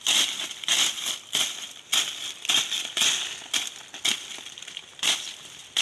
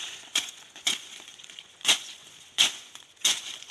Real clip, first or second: first